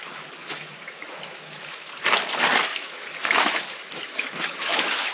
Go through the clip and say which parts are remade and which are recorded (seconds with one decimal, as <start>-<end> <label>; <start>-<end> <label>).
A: 0.0-0.4 recorded; 0.4-1.9 remade; 1.9-2.7 recorded; 2.7-5.1 remade